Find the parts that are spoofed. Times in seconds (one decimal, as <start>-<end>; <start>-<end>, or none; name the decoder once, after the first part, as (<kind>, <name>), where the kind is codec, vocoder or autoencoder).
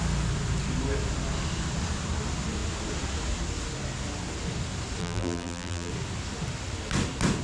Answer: 5.0-5.9 (vocoder, BigVGAN v2)